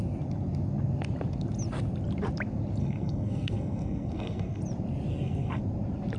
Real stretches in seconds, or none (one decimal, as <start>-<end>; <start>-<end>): 0.0-2.8; 4.6-5.1; 5.6-6.2